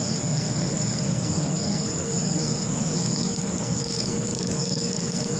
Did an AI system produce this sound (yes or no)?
yes